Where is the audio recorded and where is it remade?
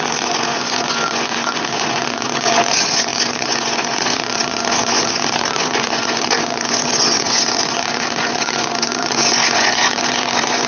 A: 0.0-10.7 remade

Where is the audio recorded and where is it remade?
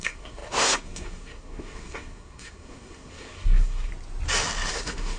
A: 0.0-3.9 remade; 3.9-4.7 recorded; 4.7-5.2 remade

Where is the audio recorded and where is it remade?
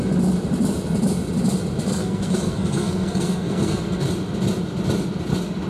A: 0.0-1.9 recorded; 1.9-4.1 remade; 4.1-5.7 recorded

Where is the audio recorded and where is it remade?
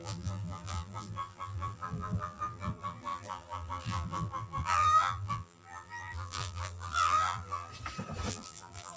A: 0.0-7.7 remade; 7.7-8.3 recorded; 8.3-9.0 remade